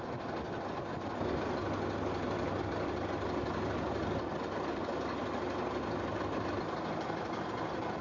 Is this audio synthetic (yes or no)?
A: no